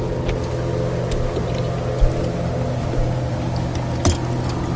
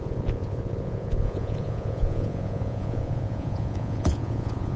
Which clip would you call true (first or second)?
first